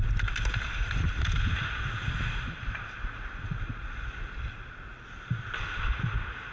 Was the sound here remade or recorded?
recorded